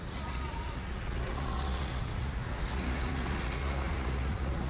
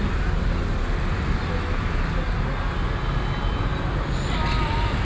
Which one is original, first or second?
second